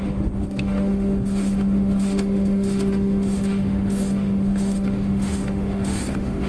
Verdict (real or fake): fake